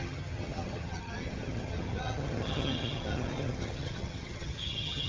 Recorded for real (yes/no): no